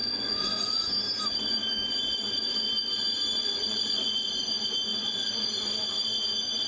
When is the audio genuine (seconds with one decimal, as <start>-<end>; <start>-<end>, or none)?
0.9-3.4; 4.3-4.9; 5.5-6.7